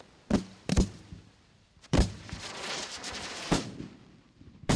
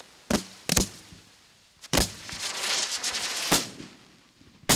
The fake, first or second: first